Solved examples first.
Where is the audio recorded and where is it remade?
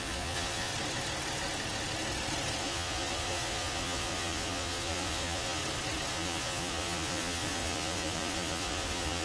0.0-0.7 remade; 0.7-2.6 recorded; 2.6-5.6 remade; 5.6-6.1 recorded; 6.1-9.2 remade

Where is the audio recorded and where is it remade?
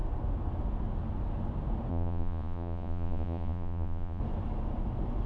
0.0-1.9 recorded; 1.9-4.2 remade; 4.2-5.3 recorded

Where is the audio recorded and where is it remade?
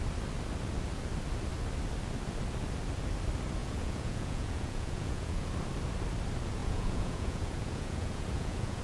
0.0-3.6 recorded; 3.6-5.5 remade; 5.5-6.6 recorded; 6.6-8.8 remade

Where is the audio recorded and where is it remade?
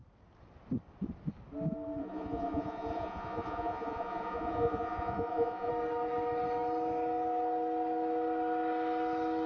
0.0-2.0 recorded; 2.0-5.7 remade; 5.7-9.5 recorded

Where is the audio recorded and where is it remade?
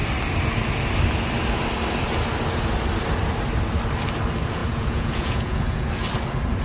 0.0-4.6 recorded; 4.6-5.9 remade; 5.9-6.6 recorded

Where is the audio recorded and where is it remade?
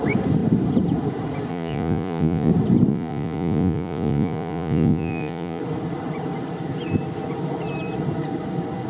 0.0-1.5 recorded; 1.5-2.5 remade; 2.5-2.9 recorded; 2.9-5.6 remade; 5.6-8.9 recorded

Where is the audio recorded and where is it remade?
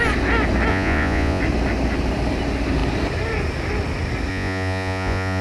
0.0-0.7 recorded; 0.7-1.4 remade; 1.4-4.3 recorded; 4.3-5.4 remade